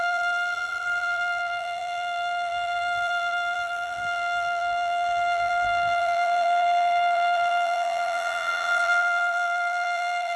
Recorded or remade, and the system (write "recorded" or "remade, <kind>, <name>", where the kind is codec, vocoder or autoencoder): remade, vocoder, BigVGAN v2